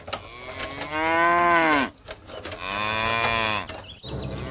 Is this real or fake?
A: real